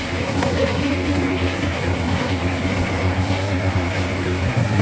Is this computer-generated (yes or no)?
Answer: yes